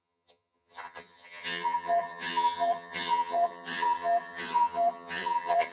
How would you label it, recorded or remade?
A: remade